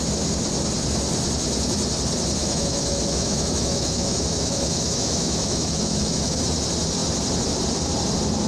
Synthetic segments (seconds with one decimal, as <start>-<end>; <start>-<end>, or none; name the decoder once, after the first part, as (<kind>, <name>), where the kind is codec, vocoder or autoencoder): 2.4-6.4 (autoencoder, DAC-VAE)